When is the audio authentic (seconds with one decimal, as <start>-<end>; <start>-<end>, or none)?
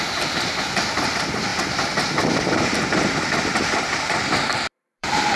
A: none